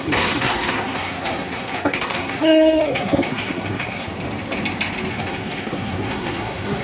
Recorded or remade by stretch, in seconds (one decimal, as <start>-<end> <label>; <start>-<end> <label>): 0.0-4.1 remade; 4.1-5.1 recorded; 5.1-6.8 remade